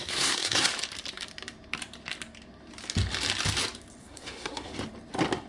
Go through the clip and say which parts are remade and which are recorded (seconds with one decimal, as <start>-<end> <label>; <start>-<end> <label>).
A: 0.0-0.7 remade; 0.7-4.0 recorded; 4.0-4.7 remade; 4.7-5.5 recorded